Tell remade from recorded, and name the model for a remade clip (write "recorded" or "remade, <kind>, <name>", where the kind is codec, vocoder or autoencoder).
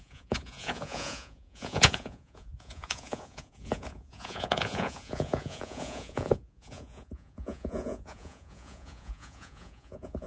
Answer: remade, vocoder, Vocos